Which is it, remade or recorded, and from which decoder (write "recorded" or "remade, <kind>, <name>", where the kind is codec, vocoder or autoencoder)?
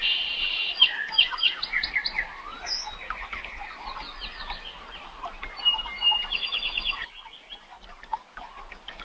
recorded